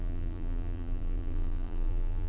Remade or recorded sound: remade